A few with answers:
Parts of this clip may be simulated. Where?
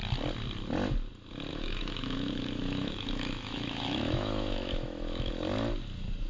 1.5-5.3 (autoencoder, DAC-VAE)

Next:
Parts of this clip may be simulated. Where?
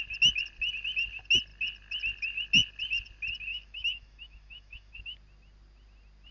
3.5-4.9 (autoencoder, DAC-VAE)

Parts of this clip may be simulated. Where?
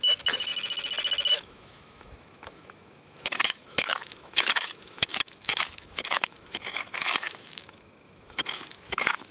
0.0-0.5 (autoencoder, DAC-VAE); 1.3-9.3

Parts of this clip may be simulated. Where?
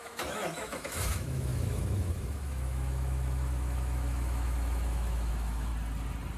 0.0-5.7 (autoencoder, DAC-VAE)